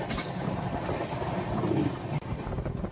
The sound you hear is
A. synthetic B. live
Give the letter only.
B